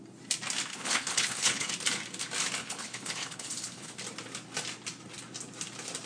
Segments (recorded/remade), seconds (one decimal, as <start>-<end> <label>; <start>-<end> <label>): 0.0-0.7 recorded; 0.7-1.7 remade; 1.7-2.6 recorded; 2.6-3.9 remade; 3.9-6.1 recorded